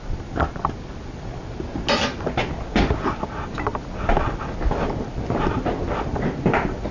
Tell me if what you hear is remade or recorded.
recorded